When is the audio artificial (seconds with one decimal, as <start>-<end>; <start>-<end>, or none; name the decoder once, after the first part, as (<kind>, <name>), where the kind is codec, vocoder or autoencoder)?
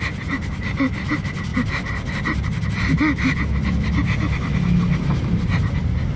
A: none